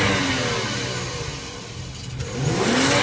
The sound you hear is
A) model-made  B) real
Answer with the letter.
B